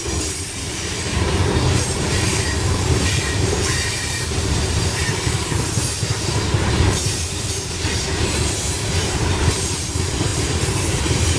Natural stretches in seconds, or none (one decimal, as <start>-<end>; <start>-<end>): none